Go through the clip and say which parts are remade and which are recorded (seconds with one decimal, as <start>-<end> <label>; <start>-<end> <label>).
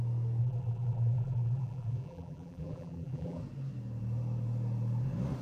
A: 0.0-0.4 recorded; 0.4-3.4 remade; 3.4-5.4 recorded